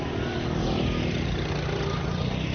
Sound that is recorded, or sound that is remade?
recorded